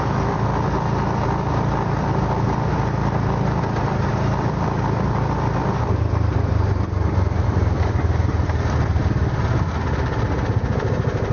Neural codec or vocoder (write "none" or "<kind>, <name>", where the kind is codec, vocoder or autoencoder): vocoder, BigVGAN v2